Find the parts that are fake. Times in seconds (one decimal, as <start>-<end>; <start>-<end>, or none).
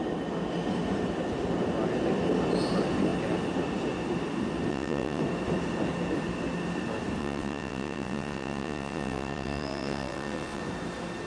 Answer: 4.7-5.2; 7.2-10.6